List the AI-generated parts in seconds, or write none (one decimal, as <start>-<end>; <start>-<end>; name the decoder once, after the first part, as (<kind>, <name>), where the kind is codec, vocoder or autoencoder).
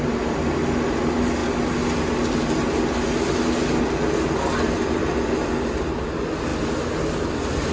none